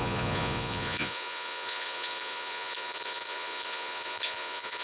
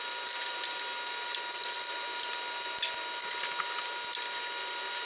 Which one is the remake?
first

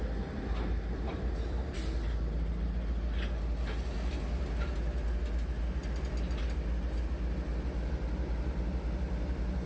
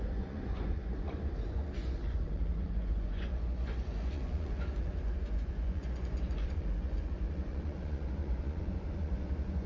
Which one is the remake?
second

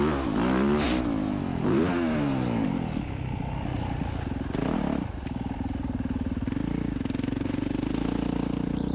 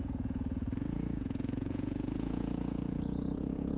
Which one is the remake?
second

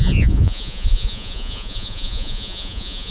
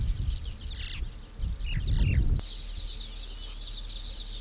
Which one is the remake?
first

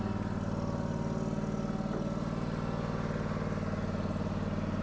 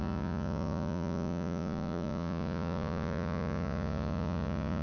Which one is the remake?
second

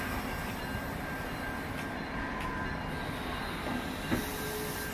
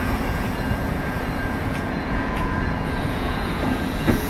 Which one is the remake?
second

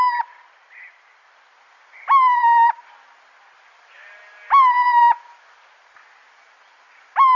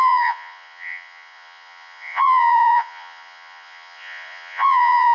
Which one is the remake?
second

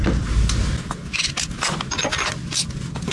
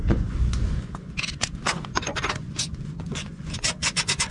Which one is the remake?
second